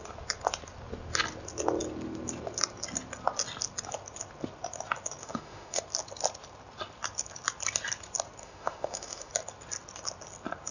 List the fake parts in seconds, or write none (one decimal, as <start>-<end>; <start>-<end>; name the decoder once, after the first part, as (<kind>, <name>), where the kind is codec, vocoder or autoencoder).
5.2-5.8 (autoencoder, DAC-VAE); 8.4-9.3